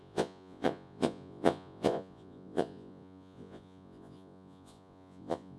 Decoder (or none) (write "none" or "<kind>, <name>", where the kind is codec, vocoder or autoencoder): vocoder, Vocos